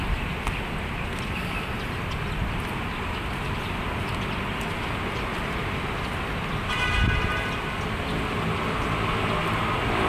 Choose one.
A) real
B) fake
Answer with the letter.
A